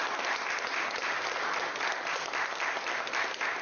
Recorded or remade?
recorded